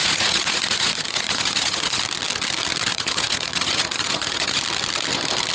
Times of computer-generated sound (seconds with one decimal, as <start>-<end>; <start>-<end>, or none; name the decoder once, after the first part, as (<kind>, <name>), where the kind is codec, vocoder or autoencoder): 0.0-2.0 (vocoder, Vocos); 2.9-4.6

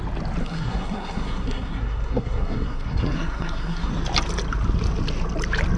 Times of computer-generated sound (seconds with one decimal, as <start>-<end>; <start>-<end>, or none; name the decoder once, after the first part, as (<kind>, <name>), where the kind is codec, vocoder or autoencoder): 0.4-3.9 (codec, SNAC)

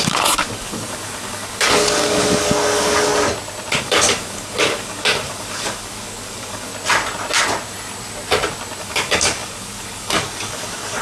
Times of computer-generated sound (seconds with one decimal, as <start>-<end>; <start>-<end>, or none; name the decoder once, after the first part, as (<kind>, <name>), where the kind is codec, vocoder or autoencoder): 0.0-3.1 (codec, DAC); 3.8-6.7; 8.8-11.0

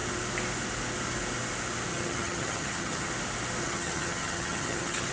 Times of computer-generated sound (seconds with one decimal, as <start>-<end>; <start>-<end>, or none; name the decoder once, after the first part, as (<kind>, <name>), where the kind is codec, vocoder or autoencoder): 1.9-3.1 (vocoder, HiFi-GAN); 3.6-5.1

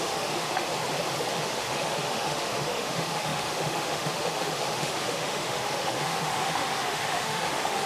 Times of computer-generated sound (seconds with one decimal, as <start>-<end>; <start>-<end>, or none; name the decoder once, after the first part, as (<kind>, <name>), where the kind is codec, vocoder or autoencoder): 0.0-0.7 (autoencoder, DAC-VAE); 1.3-7.9

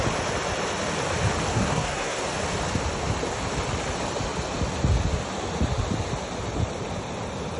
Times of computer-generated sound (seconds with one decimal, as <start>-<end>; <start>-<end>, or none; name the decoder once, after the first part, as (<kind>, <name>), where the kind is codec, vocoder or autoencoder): 1.5-2.2 (codec, SNAC)